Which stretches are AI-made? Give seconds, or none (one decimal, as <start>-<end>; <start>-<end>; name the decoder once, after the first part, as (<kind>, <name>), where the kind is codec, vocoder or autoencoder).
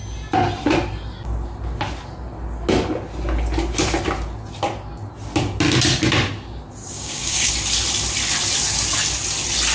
6.8-7.5 (codec, DAC)